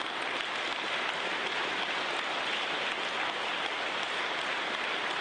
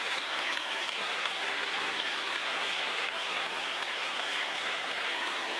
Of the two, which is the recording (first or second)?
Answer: first